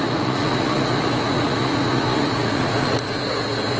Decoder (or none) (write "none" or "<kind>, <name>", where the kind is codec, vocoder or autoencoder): vocoder, Vocos